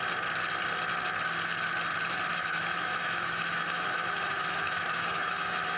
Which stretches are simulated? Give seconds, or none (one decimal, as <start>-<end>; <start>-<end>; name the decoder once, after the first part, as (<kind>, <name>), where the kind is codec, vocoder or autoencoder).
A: 2.3-5.8 (autoencoder, DAC-VAE)